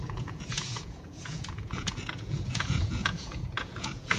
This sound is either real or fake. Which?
fake